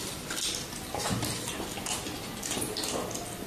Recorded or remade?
recorded